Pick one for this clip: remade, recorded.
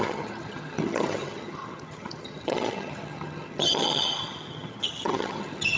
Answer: remade